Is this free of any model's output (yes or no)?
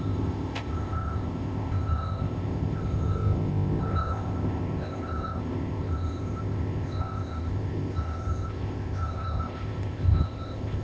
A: no